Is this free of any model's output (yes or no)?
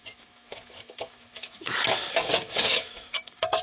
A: no